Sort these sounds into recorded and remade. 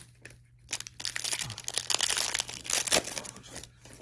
recorded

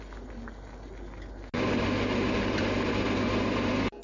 recorded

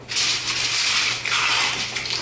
recorded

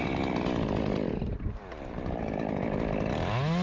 recorded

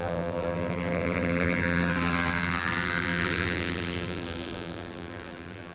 remade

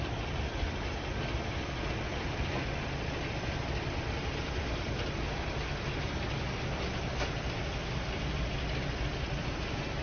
recorded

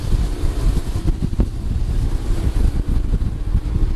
recorded